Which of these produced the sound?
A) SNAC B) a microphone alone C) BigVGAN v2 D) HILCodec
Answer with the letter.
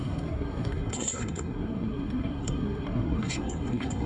A